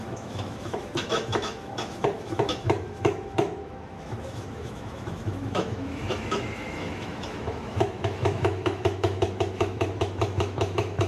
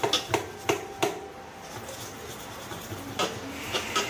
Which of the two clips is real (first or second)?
second